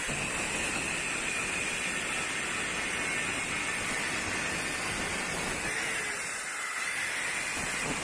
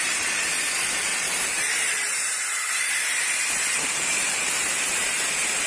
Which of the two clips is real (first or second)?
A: first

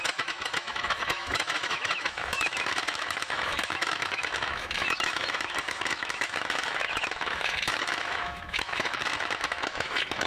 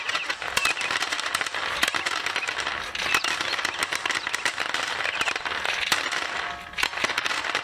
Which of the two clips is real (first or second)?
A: second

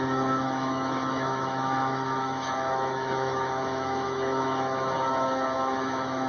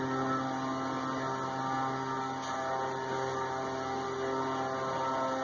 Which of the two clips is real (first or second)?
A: second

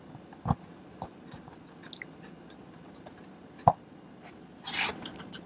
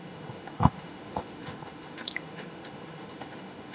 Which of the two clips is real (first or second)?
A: first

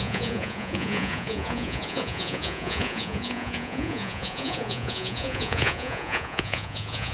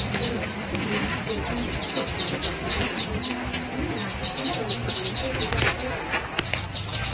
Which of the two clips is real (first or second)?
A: second